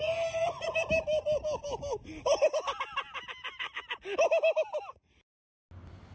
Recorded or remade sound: recorded